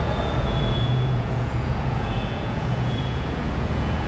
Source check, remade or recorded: remade